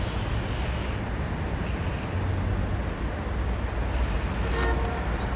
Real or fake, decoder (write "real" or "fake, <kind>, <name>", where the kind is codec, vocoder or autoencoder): real